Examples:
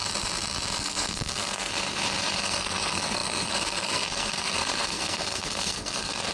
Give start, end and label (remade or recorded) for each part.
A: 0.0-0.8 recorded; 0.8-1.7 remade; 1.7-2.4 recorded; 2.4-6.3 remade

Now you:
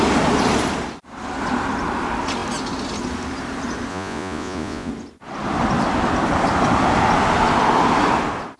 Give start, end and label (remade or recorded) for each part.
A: 0.0-3.9 recorded; 3.9-4.9 remade; 4.9-8.6 recorded